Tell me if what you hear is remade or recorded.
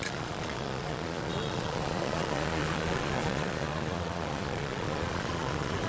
remade